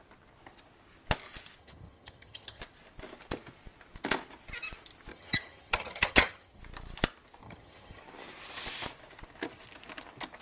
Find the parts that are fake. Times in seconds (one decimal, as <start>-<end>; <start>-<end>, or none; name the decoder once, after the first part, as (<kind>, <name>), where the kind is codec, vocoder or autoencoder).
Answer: 1.6-2.6 (vocoder, HiFi-GAN); 5.1-6.6; 7.4-8.0